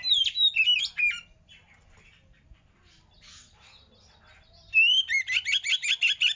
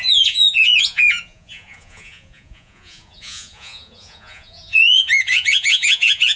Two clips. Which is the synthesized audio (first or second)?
second